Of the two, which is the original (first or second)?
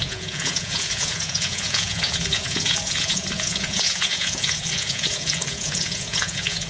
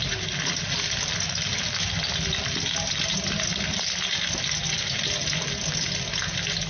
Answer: second